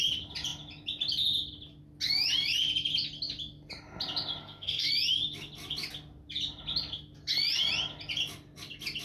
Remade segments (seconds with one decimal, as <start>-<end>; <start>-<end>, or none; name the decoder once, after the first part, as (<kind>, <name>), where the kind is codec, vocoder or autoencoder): 4.4-4.9 (codec, SNAC)